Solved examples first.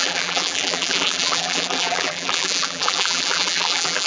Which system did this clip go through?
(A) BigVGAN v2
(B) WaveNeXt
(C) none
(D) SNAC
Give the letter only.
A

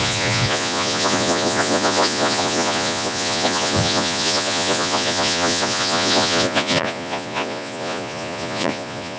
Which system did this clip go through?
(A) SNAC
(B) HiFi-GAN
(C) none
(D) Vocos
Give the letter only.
D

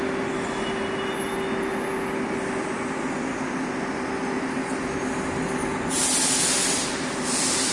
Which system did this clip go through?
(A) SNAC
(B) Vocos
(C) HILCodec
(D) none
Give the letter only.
D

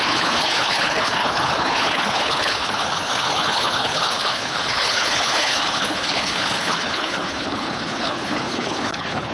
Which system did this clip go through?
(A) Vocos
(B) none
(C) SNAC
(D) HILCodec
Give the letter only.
D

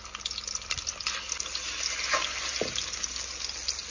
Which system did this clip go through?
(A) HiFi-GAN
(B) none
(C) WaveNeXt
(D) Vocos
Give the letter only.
B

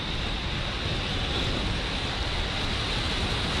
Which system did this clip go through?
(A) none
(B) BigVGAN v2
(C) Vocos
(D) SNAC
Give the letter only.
A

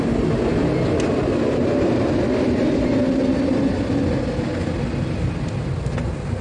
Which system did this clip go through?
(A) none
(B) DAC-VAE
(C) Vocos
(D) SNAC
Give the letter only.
A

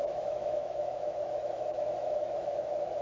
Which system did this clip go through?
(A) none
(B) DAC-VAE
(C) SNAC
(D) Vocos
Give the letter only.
B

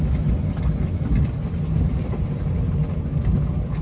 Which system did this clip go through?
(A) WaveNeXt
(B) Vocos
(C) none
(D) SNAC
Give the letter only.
C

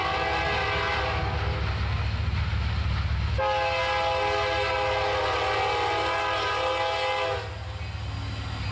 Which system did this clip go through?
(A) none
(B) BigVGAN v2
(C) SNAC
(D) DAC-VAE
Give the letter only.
A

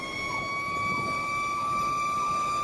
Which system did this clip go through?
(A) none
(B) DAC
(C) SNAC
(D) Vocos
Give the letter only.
A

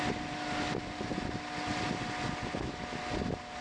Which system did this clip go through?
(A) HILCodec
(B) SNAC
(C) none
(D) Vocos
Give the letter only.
C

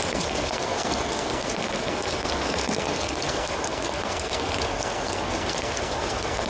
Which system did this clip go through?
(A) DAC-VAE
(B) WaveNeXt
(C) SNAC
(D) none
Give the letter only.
C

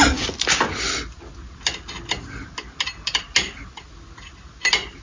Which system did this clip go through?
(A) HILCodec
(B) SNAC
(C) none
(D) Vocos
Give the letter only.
C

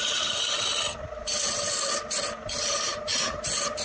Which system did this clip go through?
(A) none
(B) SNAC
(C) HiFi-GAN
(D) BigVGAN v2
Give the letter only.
A